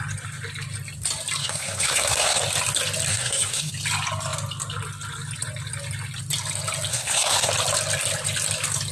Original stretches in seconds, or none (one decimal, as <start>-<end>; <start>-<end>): 0.0-1.4; 2.4-3.1; 3.7-6.9; 7.5-8.9